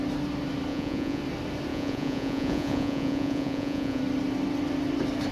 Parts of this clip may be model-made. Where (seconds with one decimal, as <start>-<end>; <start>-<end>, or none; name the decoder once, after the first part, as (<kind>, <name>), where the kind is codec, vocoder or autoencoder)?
0.7-1.2 (vocoder, Vocos); 1.7-4.0